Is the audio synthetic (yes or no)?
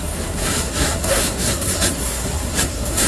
yes